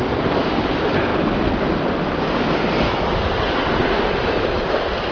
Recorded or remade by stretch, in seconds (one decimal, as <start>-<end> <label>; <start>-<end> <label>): 0.0-5.1 recorded